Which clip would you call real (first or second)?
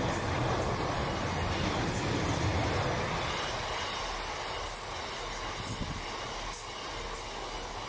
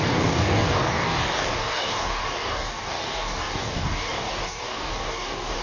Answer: first